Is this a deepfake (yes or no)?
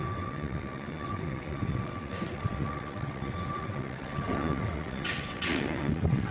yes